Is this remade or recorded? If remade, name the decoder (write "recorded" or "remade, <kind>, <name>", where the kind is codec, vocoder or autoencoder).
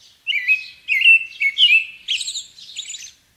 recorded